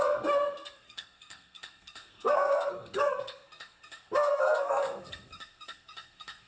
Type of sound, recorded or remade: remade